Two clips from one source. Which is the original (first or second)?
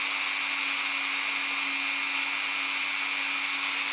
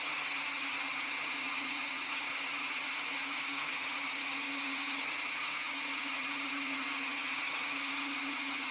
first